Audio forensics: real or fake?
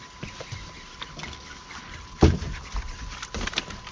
real